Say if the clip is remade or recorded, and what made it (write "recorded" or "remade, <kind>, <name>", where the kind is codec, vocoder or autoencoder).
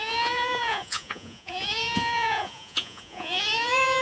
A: remade, vocoder, Vocos